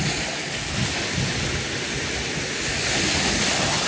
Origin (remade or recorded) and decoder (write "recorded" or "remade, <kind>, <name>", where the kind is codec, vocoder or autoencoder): recorded